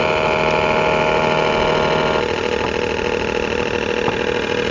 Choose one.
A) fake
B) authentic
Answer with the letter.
B